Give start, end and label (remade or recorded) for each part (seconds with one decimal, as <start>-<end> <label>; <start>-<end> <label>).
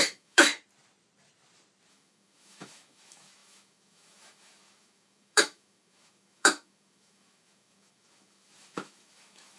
0.0-0.5 remade; 0.5-1.9 recorded; 1.9-9.6 remade